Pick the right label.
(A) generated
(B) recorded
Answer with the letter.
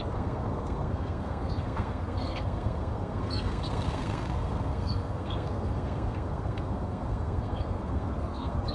A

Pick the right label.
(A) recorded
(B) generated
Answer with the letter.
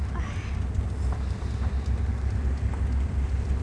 A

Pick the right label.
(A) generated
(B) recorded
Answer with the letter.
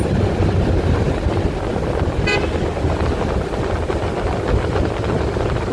B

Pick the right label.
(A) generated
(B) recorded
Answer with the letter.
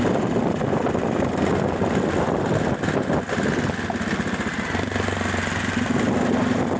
B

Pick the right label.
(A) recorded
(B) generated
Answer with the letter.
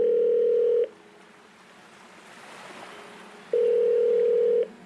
A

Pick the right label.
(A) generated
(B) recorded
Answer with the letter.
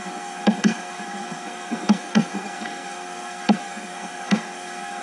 A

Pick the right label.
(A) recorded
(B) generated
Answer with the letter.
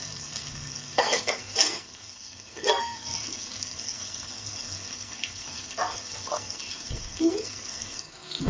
B